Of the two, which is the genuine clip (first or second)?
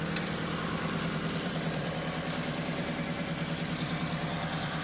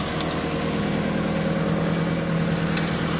second